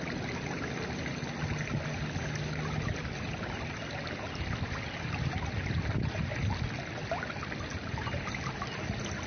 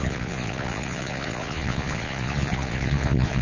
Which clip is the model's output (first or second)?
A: second